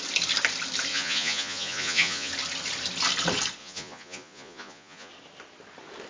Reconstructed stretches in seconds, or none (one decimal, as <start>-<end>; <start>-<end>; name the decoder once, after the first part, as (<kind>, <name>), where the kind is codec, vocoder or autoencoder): 0.9-2.3 (vocoder, Vocos); 3.6-5.1